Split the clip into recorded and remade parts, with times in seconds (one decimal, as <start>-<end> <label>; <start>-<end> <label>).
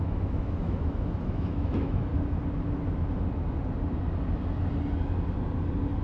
0.0-2.1 remade; 2.1-6.0 recorded